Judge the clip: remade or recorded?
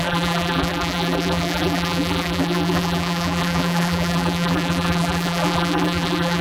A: remade